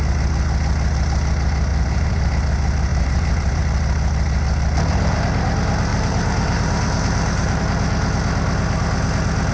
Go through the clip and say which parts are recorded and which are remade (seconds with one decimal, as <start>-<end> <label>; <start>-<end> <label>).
0.0-1.7 recorded; 1.7-2.3 remade; 2.3-2.9 recorded; 2.9-3.6 remade; 3.6-5.9 recorded; 5.9-7.6 remade; 7.6-9.5 recorded